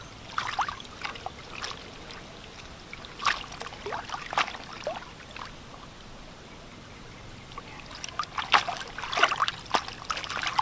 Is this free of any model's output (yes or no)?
yes